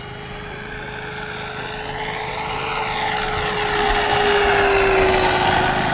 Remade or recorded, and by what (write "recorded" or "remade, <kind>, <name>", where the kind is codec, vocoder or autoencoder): recorded